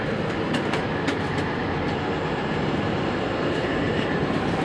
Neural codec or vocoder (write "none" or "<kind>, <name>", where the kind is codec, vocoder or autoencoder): vocoder, BigVGAN v2